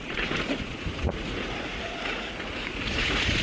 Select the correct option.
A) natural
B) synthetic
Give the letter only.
B